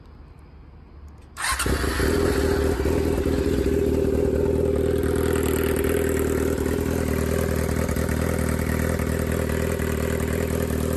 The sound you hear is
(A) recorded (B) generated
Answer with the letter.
A